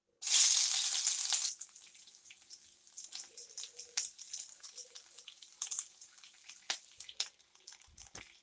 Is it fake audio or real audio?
real